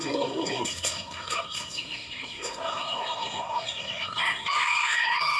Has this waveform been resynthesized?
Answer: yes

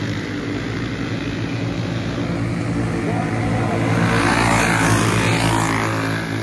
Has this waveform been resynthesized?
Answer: no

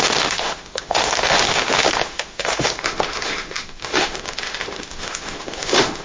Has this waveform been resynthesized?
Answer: yes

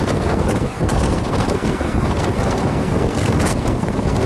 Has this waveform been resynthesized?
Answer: yes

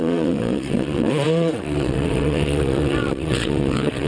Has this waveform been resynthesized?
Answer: yes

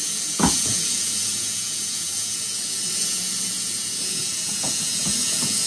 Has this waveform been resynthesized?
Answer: yes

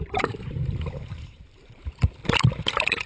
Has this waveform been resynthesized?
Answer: yes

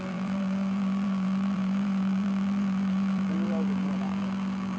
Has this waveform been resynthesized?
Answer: yes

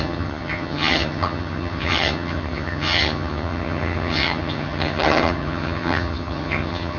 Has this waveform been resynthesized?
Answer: yes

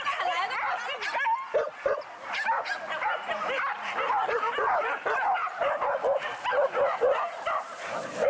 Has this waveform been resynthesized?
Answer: no